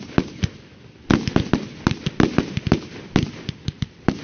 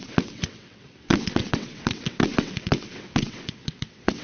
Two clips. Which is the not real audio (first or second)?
second